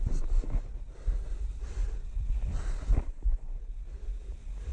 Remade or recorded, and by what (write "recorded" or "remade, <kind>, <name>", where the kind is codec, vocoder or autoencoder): recorded